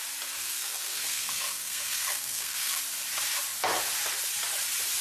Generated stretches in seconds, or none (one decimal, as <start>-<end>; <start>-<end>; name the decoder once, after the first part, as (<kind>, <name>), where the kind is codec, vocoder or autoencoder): 0.4-2.8 (codec, SNAC)